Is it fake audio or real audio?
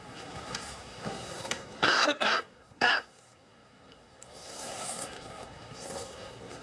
fake